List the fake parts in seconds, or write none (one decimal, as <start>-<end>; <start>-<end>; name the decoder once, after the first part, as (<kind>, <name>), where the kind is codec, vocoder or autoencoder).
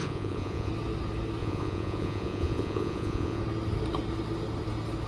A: 0.0-0.7 (vocoder, Vocos); 1.4-3.4